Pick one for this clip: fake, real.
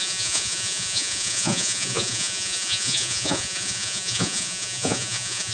fake